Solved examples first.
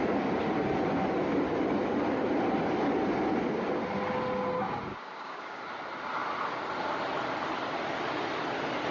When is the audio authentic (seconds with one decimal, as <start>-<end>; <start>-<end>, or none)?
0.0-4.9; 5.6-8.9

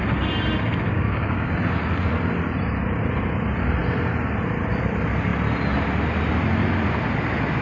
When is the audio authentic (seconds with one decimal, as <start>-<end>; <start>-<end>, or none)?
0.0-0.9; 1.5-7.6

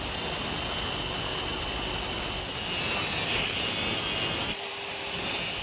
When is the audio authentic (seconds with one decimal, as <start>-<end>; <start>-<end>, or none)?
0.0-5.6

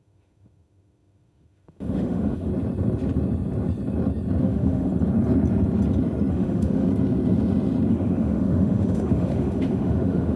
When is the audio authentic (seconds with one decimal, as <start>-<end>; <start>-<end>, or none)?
2.5-4.4; 4.9-6.3; 6.9-7.9